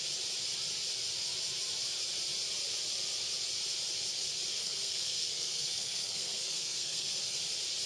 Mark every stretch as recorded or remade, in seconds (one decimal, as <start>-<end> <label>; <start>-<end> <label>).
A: 0.0-4.6 recorded; 4.6-7.4 remade; 7.4-7.9 recorded